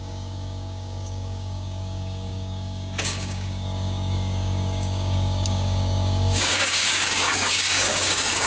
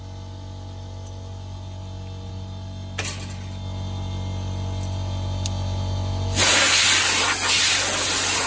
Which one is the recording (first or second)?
second